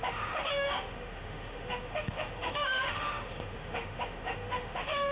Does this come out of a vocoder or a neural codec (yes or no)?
yes